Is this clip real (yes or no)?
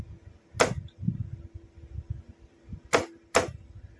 yes